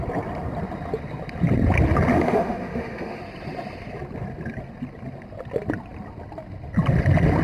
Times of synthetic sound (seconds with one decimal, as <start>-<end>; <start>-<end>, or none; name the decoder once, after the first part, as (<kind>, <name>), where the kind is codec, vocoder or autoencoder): 2.1-3.2 (autoencoder, DAC-VAE)